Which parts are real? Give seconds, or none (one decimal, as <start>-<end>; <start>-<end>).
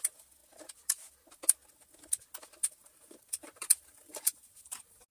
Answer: 0.0-2.8